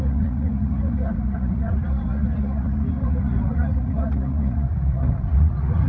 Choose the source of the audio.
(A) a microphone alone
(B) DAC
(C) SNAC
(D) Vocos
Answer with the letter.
D